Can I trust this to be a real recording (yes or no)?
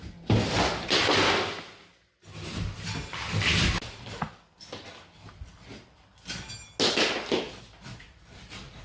yes